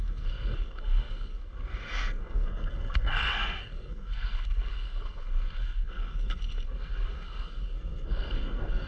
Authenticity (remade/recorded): remade